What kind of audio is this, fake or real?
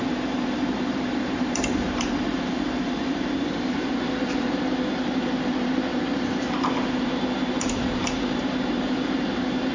fake